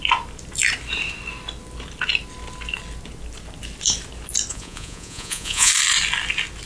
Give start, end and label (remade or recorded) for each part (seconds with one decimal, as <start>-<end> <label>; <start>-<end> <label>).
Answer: 0.0-4.5 recorded; 4.5-5.7 remade; 5.7-6.7 recorded